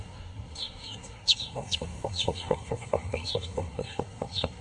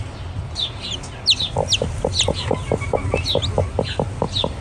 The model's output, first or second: first